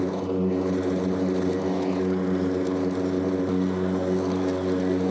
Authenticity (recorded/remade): recorded